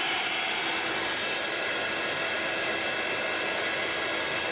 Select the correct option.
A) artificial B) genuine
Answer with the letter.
B